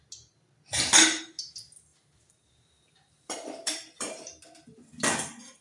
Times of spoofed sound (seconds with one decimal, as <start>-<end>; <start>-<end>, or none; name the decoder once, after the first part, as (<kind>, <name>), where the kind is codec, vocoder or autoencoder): 1.9-4.1 (vocoder, BigVGAN v2)